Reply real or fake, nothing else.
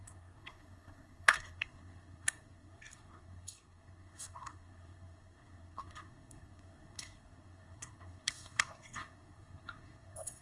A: fake